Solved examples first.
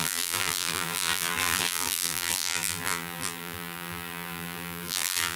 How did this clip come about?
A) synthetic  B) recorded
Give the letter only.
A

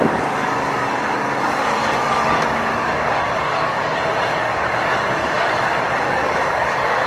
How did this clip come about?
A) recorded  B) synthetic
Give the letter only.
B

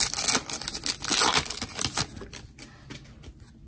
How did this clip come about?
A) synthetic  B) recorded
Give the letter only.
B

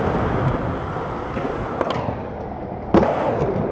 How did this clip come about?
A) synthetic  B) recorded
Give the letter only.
B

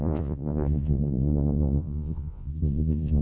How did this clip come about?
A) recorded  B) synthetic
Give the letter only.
B